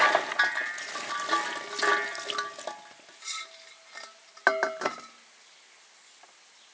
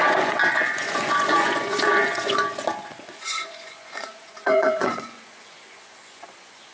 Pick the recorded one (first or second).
first